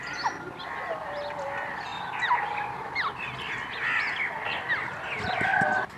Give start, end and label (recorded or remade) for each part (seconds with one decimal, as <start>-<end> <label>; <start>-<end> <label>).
0.0-6.0 recorded